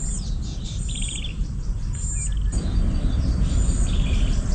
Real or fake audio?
real